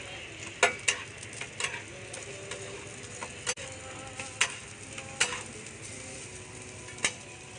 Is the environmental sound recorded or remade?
recorded